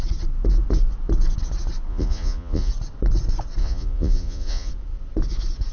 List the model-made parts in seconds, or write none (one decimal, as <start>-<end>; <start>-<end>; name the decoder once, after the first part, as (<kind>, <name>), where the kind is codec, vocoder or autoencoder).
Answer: 1.9-2.7 (vocoder, Vocos); 3.6-4.7